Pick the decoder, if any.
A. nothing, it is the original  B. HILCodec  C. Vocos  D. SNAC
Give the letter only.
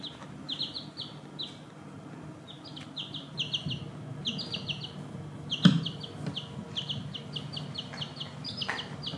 A